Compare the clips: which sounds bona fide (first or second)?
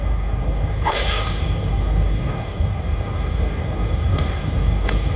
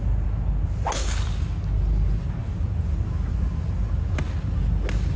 second